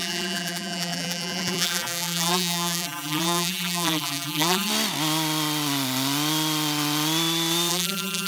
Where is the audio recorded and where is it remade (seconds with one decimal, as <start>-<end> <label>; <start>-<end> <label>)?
0.0-4.7 remade; 4.7-7.7 recorded; 7.7-8.3 remade